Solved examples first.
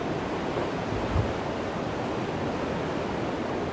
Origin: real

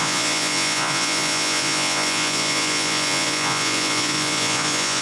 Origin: fake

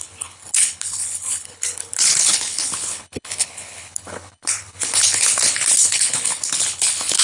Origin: fake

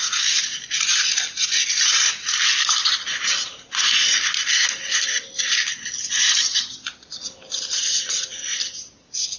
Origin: real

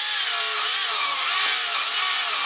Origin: real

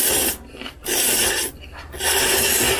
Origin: real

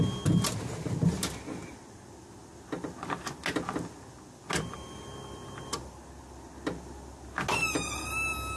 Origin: real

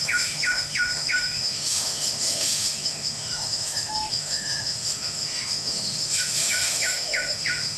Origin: fake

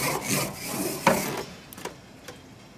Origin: real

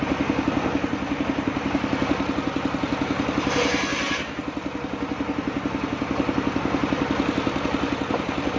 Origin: real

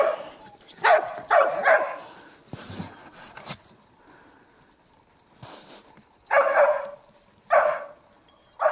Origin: real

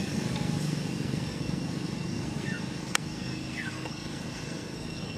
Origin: fake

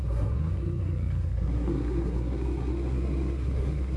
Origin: fake